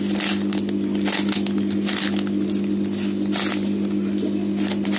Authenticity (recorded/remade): recorded